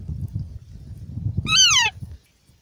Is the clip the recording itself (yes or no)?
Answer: yes